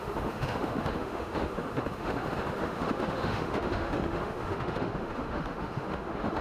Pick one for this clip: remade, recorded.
remade